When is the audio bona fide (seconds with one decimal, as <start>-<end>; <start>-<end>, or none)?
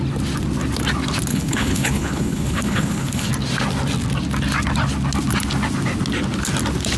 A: 0.0-1.3; 3.3-7.0